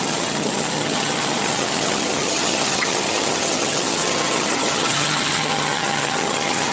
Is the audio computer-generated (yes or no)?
yes